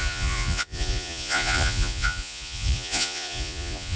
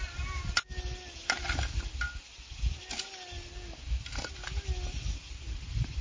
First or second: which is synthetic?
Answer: first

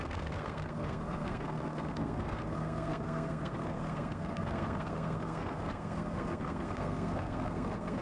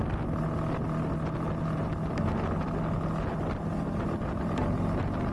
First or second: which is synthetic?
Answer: first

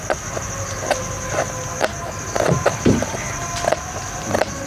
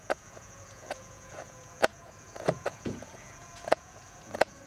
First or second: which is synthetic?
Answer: second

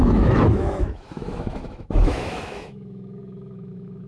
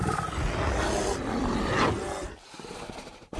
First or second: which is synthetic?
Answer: first